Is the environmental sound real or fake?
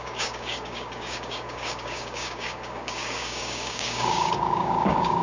fake